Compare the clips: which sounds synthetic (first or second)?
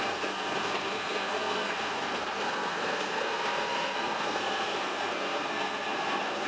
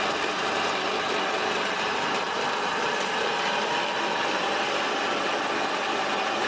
first